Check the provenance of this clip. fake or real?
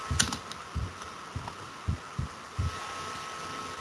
real